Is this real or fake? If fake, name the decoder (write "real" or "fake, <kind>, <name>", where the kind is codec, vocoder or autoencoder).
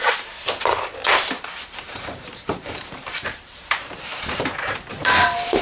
fake, vocoder, BigVGAN v2